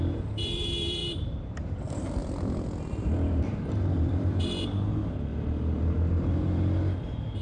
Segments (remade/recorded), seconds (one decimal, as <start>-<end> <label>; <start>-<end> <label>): 0.0-2.2 remade; 2.2-2.9 recorded; 2.9-5.3 remade; 5.3-6.1 recorded; 6.1-7.4 remade